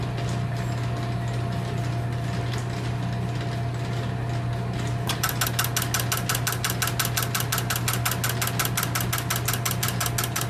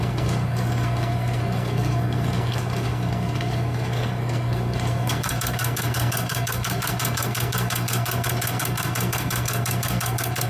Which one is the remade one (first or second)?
second